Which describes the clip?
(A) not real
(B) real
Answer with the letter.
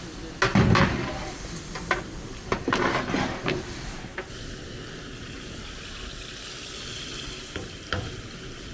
B